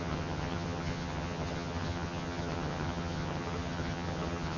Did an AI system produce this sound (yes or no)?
yes